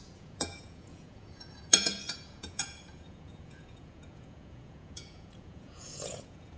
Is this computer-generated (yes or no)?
yes